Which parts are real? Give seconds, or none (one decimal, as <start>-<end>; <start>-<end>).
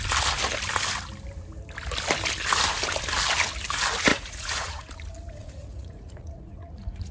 0.0-4.1; 5.0-5.4